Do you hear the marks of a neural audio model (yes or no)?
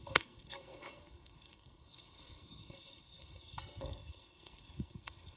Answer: yes